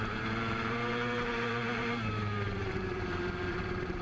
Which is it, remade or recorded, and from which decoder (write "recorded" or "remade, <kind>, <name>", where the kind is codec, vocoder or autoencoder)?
remade, vocoder, BigVGAN v2